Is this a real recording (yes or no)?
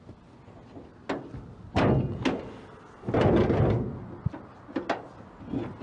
yes